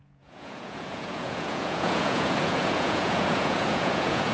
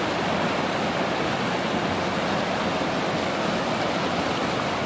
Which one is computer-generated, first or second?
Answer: first